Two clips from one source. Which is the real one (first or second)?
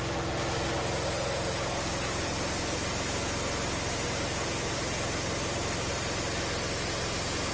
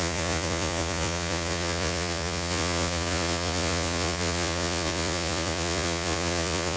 first